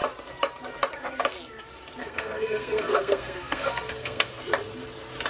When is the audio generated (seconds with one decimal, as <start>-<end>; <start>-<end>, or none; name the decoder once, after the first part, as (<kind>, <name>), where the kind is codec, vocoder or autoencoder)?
2.0-4.4 (codec, SNAC)